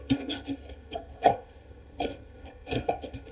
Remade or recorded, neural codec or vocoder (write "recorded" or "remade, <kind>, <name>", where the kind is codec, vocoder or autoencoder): remade, codec, SNAC